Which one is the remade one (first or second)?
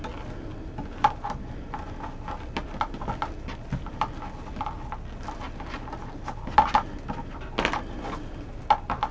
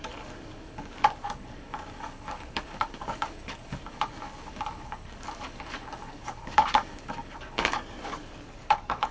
second